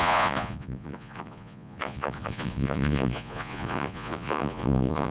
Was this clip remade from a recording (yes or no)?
yes